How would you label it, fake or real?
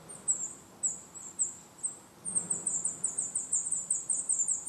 real